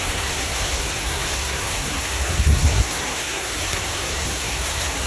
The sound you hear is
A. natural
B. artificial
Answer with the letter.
B